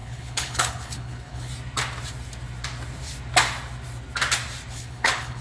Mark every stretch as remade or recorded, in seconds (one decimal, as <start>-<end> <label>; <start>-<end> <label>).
0.0-1.5 remade; 1.5-4.7 recorded; 4.7-5.4 remade